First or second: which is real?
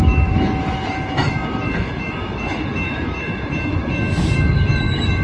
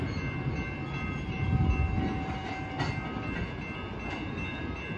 second